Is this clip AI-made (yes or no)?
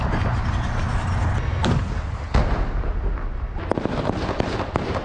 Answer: no